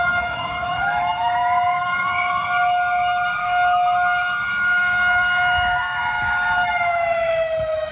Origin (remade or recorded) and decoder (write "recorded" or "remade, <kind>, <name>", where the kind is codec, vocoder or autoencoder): remade, autoencoder, DAC-VAE